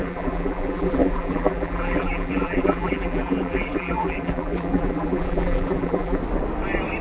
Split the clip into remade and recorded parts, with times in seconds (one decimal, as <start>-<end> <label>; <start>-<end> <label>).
0.0-6.2 remade; 6.2-7.0 recorded